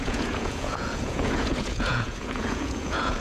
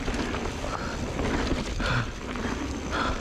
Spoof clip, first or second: first